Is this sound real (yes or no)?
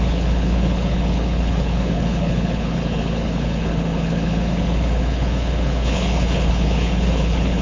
no